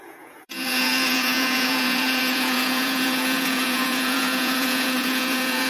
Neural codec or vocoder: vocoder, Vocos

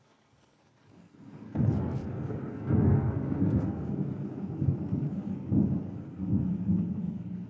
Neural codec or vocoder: codec, SNAC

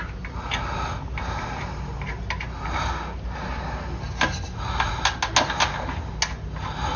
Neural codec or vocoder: none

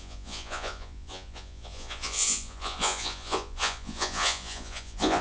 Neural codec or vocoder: vocoder, Vocos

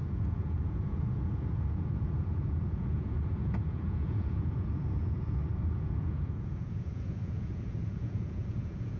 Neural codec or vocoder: vocoder, Vocos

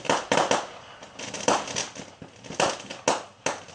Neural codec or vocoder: none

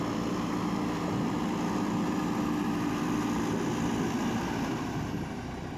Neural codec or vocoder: none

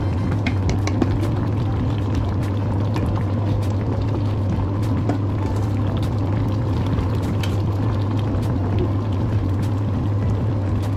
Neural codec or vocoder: none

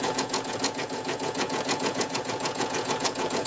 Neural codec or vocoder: vocoder, Vocos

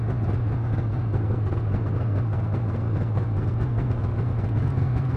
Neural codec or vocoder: codec, SNAC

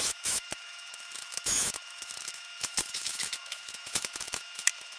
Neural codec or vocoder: autoencoder, DAC-VAE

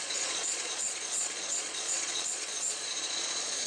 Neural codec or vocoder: vocoder, Vocos